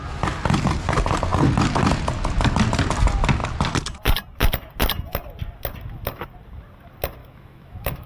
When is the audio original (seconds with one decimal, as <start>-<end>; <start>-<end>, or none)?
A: 0.0-7.2